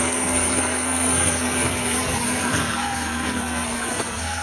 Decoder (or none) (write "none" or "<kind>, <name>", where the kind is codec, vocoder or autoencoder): codec, SNAC